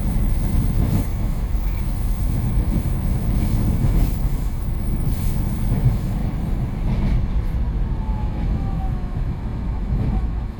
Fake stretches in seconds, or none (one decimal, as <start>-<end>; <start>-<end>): 0.0-6.2; 8.0-10.6